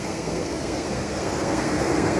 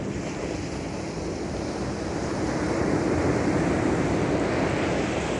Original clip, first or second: second